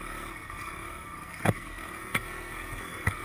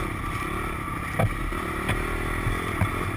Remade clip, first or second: first